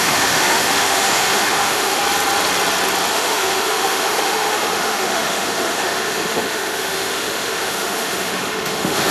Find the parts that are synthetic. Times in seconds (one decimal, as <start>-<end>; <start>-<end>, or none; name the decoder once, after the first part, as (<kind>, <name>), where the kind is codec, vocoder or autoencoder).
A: 0.0-2.0 (autoencoder, DAC-VAE); 3.1-9.1